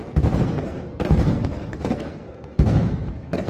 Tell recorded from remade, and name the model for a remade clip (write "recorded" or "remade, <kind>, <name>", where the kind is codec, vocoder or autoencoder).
remade, codec, SNAC